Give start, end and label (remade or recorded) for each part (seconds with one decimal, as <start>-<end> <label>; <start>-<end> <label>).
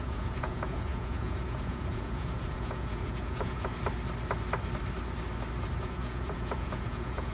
0.0-3.7 remade; 3.7-5.8 recorded; 5.8-7.3 remade